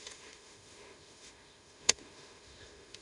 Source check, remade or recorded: remade